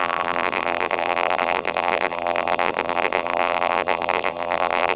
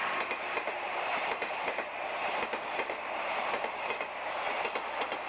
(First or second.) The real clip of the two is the second